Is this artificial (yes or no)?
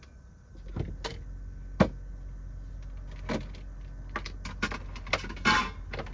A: no